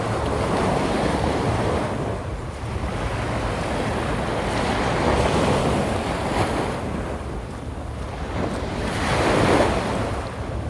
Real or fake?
real